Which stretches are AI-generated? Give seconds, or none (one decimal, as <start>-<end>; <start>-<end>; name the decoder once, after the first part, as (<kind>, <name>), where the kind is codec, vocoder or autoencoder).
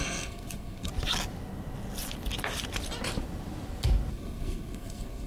0.0-0.9 (codec, SNAC); 4.1-5.3